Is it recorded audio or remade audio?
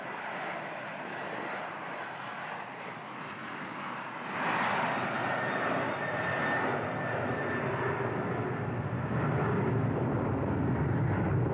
recorded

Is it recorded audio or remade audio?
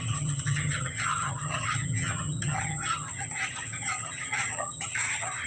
remade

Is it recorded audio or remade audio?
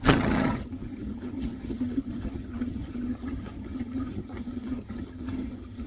remade